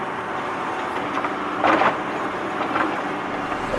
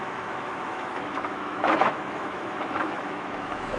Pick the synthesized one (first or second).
second